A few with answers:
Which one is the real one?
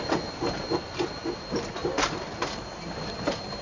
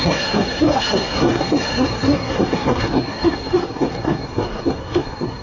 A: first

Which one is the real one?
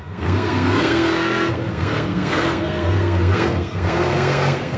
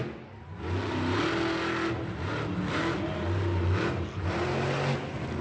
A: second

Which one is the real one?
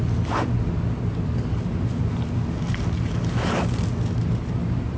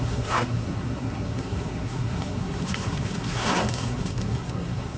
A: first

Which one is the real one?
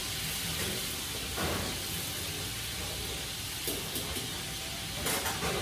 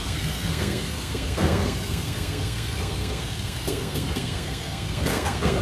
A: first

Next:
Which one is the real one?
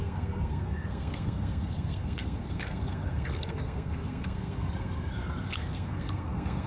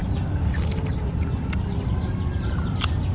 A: second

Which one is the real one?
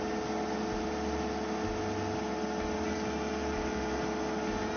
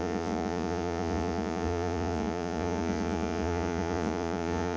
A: first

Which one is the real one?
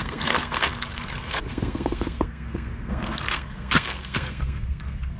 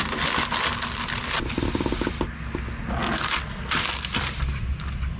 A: second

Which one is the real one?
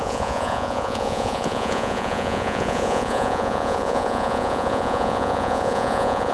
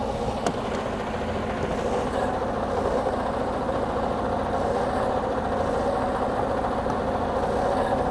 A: second